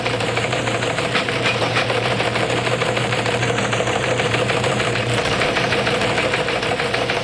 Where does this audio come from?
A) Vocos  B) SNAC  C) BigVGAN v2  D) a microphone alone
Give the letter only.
C